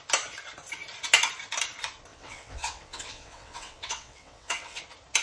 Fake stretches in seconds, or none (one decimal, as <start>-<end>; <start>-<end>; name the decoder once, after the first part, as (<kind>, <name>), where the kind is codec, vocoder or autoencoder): 2.1-4.8 (vocoder, WaveNeXt)